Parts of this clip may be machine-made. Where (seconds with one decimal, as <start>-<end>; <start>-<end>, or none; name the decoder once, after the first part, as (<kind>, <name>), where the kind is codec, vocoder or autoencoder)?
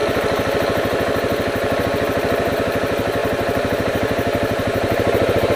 3.2-5.6 (vocoder, BigVGAN v2)